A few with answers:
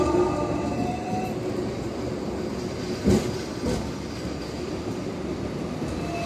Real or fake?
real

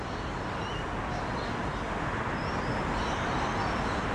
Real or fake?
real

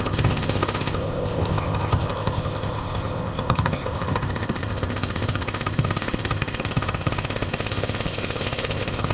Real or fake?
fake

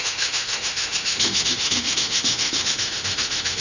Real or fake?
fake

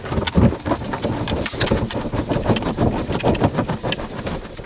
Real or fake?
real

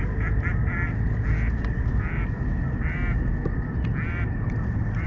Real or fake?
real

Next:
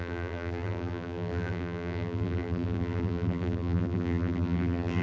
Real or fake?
fake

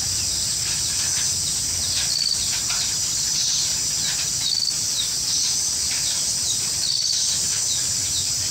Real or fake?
real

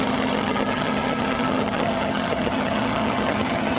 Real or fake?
fake